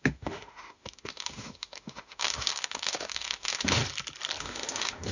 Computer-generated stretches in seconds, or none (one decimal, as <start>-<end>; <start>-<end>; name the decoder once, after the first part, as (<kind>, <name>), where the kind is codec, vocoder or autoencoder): 0.0-3.8 (autoencoder, DAC-VAE); 4.4-5.1